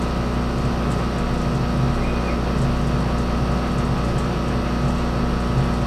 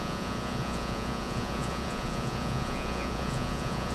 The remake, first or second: second